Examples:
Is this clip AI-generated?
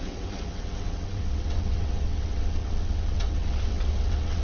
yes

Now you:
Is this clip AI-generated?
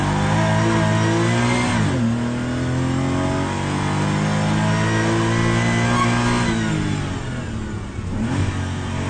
no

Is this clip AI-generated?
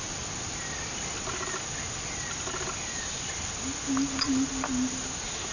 no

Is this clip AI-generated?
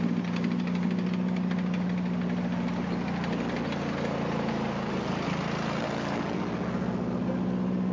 no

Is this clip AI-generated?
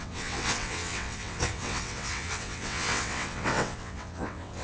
yes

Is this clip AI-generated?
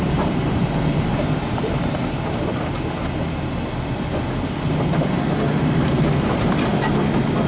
no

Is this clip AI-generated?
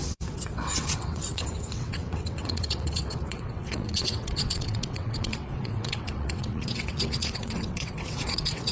yes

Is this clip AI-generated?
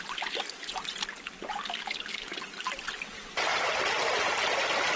no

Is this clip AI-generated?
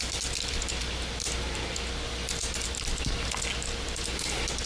no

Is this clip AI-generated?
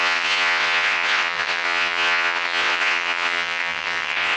yes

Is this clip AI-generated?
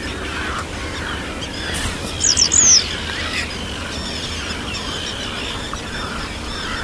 no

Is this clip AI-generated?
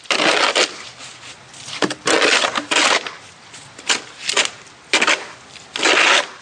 no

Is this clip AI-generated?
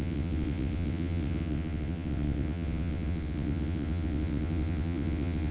yes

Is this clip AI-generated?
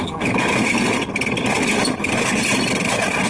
no